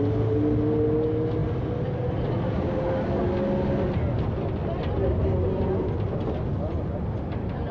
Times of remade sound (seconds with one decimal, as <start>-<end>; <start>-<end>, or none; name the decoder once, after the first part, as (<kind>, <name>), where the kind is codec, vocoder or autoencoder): none